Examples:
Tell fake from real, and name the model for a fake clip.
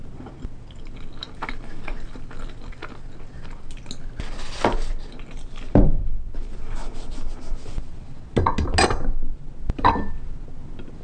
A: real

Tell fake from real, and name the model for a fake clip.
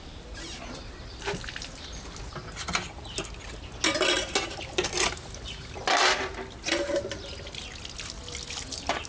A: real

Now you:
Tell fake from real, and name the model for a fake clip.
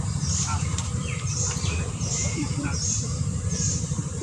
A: fake, vocoder, BigVGAN v2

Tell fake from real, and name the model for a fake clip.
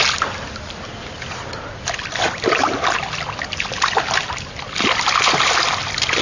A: real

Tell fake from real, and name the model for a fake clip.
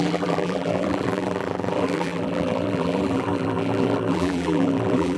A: fake, vocoder, BigVGAN v2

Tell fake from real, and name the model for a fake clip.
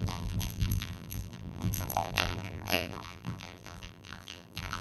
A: fake, vocoder, BigVGAN v2